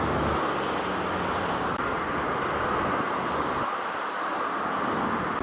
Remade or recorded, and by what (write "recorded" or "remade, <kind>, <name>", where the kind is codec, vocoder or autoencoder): recorded